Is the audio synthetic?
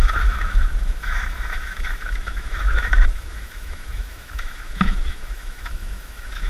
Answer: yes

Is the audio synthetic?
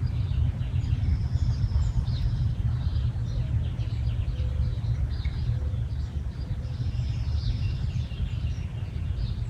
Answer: no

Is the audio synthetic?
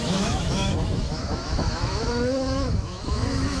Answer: yes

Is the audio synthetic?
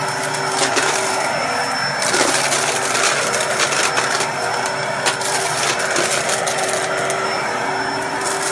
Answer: no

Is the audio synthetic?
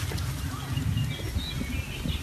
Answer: no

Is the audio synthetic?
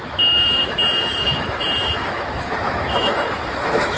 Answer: yes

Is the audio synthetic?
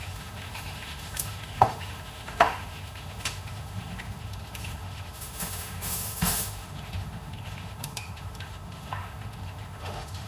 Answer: yes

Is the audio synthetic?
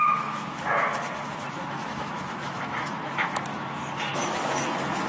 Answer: yes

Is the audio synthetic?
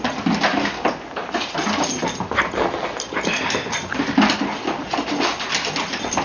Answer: no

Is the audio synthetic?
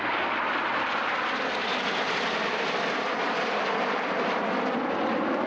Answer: no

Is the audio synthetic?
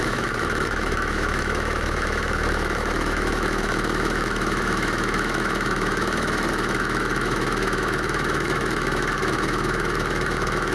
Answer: yes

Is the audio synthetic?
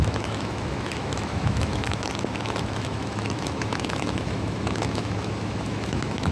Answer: yes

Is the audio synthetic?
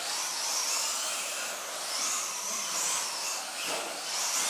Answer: no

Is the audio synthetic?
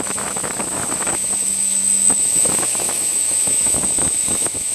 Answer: yes